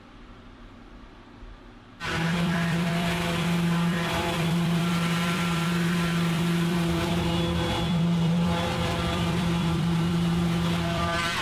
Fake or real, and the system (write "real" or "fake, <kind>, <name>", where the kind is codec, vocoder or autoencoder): fake, vocoder, BigVGAN v2